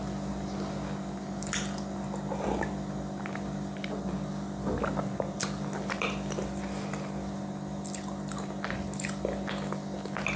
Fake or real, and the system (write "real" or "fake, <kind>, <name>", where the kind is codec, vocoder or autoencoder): real